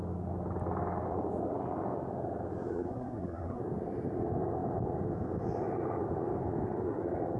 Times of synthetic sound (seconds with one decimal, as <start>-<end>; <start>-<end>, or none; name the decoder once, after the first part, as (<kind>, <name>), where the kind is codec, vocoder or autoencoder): 2.7-3.6 (codec, SNAC)